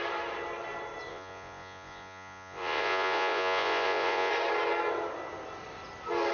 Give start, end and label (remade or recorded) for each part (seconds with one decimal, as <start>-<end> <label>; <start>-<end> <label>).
0.0-1.1 recorded; 1.1-4.3 remade; 4.3-6.3 recorded